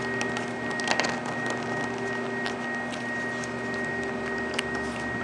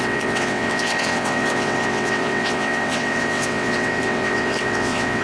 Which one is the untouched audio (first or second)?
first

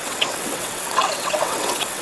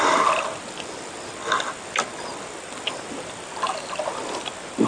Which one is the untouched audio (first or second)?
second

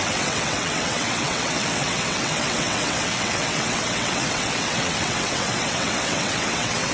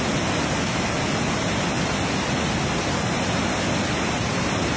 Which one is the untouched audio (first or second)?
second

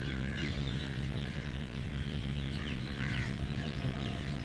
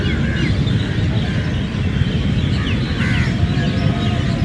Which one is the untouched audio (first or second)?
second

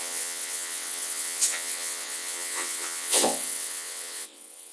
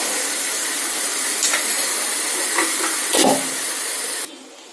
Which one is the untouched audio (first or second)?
second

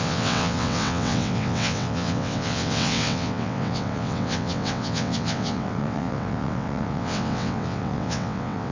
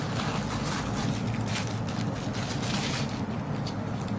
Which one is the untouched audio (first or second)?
second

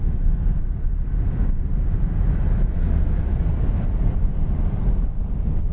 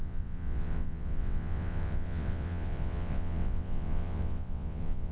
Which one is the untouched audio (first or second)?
first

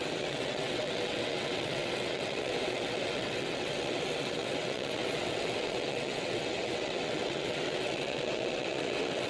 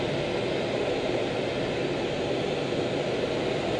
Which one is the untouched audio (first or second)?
second